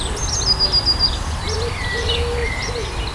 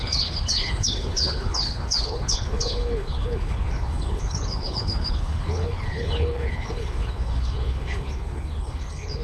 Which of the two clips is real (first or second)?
first